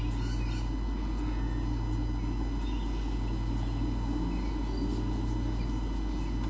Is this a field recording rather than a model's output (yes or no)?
yes